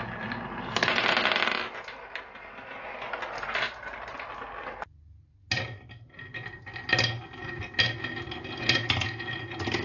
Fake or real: real